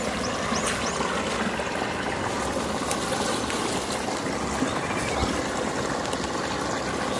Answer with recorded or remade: recorded